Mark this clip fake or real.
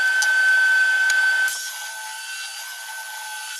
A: real